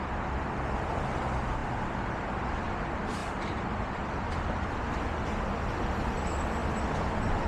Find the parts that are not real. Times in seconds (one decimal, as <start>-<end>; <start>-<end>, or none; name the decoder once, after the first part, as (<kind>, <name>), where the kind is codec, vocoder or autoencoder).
1.6-2.6 (vocoder, BigVGAN v2); 3.2-4.7